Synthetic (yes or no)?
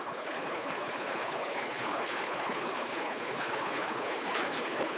yes